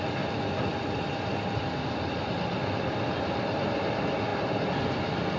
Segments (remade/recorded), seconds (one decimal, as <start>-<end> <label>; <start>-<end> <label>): 0.0-5.4 recorded